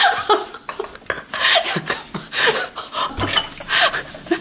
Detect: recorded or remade recorded